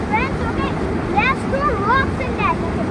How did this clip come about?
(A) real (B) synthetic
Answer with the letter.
A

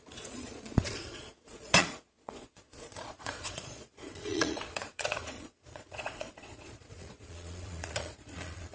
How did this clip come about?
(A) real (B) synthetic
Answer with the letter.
B